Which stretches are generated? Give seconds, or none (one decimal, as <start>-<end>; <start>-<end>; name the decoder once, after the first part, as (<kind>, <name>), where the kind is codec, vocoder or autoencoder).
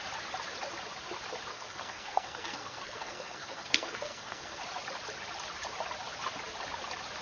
1.5-4.6 (codec, SNAC)